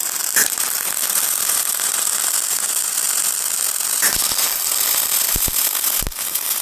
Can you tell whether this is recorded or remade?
recorded